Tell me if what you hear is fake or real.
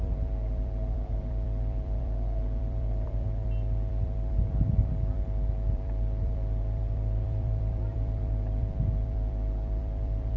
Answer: fake